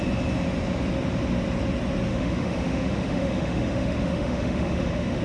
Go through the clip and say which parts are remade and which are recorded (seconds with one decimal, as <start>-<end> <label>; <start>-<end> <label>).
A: 0.0-2.1 recorded; 2.1-5.2 remade